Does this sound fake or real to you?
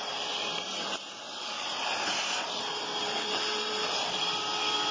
fake